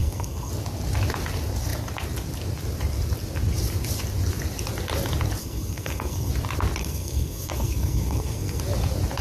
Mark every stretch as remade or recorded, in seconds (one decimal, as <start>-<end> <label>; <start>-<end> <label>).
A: 0.0-0.5 remade; 0.5-5.4 recorded; 5.4-6.3 remade; 6.3-6.8 recorded; 6.8-8.6 remade; 8.6-9.2 recorded

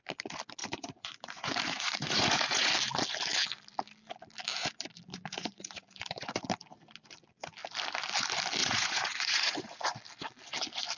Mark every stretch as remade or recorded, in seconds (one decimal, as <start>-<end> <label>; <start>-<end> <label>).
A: 0.0-0.6 recorded; 0.6-2.7 remade; 2.7-5.1 recorded; 5.1-6.4 remade; 6.4-8.6 recorded; 8.6-10.0 remade; 10.0-11.0 recorded

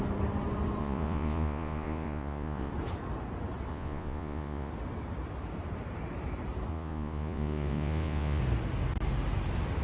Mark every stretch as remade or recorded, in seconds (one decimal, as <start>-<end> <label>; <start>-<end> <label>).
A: 0.0-0.8 recorded; 0.8-2.7 remade; 2.7-3.7 recorded; 3.7-4.7 remade; 4.7-6.7 recorded; 6.7-8.4 remade; 8.4-9.8 recorded

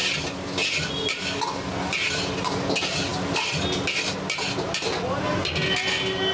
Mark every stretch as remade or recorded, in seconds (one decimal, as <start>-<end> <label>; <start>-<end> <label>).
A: 0.0-6.3 recorded

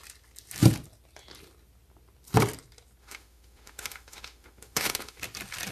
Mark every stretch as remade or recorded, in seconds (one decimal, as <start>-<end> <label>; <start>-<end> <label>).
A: 0.0-3.0 recorded; 3.0-5.2 remade; 5.2-5.7 recorded

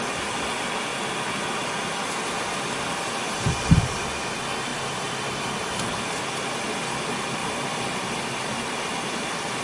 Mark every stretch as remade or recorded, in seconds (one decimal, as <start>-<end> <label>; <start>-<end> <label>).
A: 0.0-4.7 recorded; 4.7-5.8 remade; 5.8-7.4 recorded; 7.4-8.2 remade; 8.2-9.6 recorded

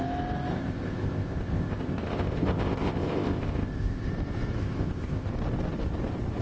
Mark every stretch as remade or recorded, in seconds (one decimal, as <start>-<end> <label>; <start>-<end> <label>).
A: 0.0-0.5 recorded; 0.5-4.1 remade; 4.1-4.6 recorded; 4.6-5.3 remade; 5.3-6.4 recorded